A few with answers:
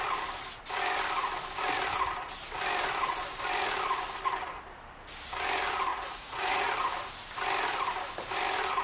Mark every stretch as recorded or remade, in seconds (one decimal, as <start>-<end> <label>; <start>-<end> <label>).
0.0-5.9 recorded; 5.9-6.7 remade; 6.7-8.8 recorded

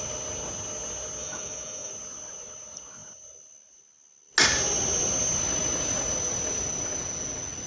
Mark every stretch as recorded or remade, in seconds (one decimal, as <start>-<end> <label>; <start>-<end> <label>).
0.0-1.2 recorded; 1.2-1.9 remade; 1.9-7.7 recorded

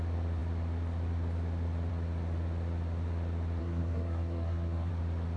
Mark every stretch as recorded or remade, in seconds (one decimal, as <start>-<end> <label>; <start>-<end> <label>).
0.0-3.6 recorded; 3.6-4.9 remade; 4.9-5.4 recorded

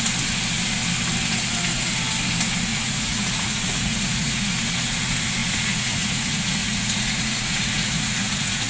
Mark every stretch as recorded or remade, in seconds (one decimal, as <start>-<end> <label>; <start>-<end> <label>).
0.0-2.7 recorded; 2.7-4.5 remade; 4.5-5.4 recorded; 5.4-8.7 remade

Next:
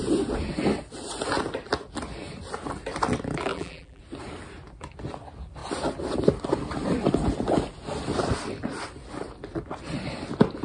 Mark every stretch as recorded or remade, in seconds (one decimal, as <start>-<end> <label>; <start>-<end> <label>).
0.0-3.5 recorded; 3.5-4.0 remade; 4.0-10.6 recorded